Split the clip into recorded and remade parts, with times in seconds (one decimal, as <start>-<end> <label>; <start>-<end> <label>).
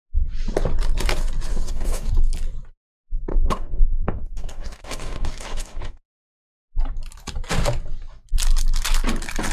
0.0-1.5 recorded; 1.5-2.1 remade; 2.1-3.3 recorded; 3.3-6.5 remade; 6.5-9.5 recorded